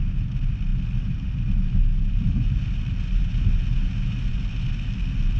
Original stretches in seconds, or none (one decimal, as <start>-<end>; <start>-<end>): 0.0-5.4